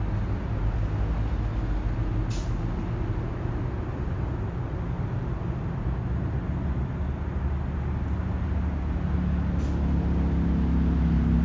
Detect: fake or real real